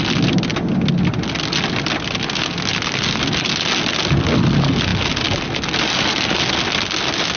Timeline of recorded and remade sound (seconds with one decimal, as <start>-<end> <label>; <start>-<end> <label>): 0.0-7.4 recorded